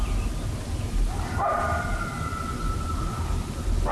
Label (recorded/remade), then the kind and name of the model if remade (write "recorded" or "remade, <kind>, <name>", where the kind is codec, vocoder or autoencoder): recorded